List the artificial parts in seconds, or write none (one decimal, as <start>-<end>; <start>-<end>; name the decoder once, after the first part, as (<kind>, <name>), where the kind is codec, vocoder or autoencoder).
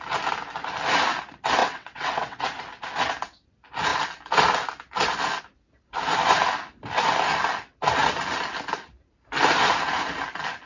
1.6-2.4 (vocoder, WaveNeXt)